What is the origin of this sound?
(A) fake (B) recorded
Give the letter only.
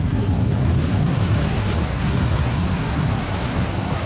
A